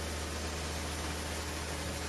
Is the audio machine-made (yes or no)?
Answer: no